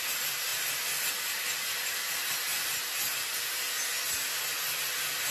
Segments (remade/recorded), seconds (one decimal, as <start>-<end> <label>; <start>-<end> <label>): 0.0-5.3 recorded